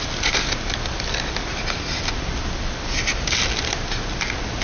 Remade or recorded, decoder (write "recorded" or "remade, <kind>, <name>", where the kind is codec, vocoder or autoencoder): recorded